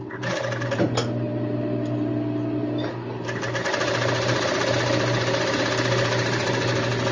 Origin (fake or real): real